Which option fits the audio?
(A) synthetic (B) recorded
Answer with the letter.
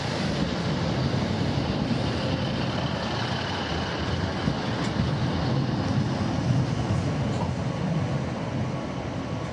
B